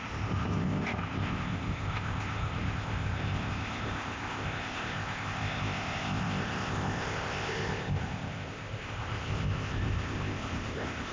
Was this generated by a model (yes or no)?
yes